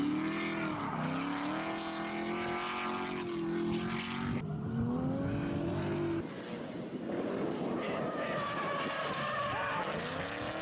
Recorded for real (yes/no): yes